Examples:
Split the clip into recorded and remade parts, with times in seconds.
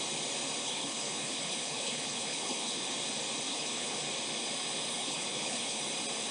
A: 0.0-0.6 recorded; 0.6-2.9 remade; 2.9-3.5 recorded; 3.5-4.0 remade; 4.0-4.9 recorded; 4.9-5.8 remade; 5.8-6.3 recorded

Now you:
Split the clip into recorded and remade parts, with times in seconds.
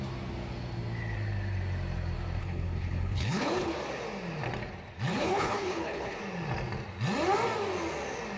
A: 0.0-2.4 recorded; 2.4-3.7 remade; 3.7-5.1 recorded; 5.1-6.2 remade; 6.2-8.4 recorded